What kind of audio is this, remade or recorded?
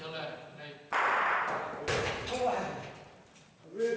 recorded